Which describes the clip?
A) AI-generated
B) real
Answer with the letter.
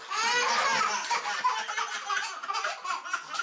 B